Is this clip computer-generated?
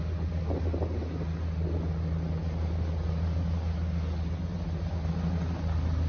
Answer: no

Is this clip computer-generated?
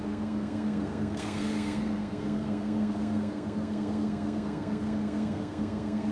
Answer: yes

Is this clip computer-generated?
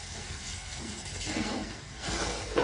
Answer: yes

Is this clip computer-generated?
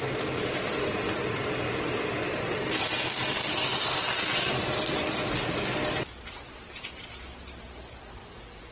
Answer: no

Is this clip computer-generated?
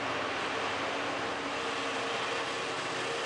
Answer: no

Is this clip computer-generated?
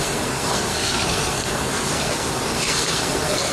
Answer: yes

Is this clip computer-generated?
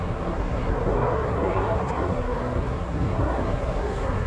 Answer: yes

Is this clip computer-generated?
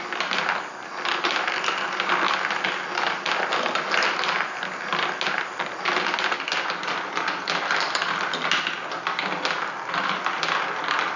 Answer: no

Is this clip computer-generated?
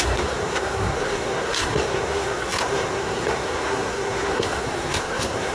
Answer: yes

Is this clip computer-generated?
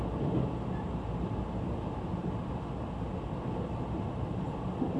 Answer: no